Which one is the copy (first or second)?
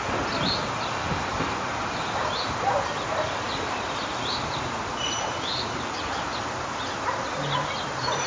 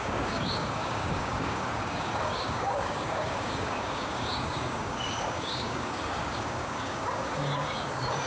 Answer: second